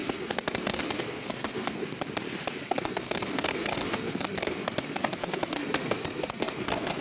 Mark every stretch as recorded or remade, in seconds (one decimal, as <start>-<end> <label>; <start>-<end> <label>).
0.0-1.8 remade; 1.8-2.6 recorded; 2.6-7.0 remade